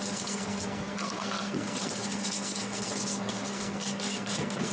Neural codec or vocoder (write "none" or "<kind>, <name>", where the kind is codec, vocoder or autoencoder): codec, SNAC